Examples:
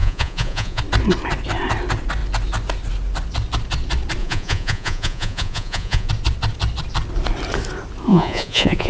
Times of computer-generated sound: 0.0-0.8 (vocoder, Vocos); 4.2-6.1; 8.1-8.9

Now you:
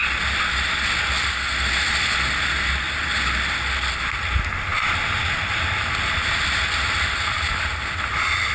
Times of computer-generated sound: none

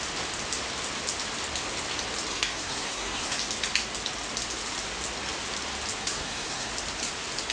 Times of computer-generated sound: 2.3-3.4 (codec, SNAC); 6.0-6.7